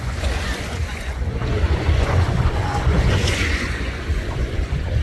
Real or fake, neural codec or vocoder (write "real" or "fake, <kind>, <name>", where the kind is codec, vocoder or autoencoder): fake, vocoder, Vocos